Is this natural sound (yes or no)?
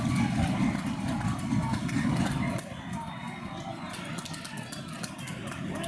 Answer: yes